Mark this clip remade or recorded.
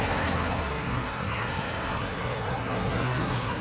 remade